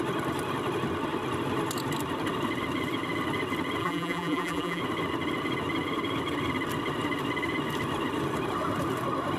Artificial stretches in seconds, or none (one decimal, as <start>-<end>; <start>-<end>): 3.8-4.8